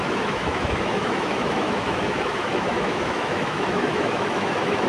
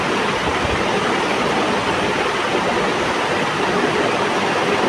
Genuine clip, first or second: second